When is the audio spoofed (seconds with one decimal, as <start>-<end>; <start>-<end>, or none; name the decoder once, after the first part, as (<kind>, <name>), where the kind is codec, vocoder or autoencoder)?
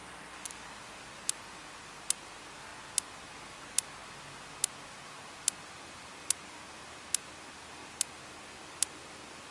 none